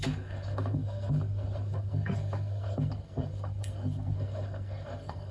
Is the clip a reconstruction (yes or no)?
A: yes